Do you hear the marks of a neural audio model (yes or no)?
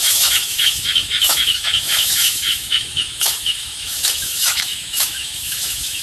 yes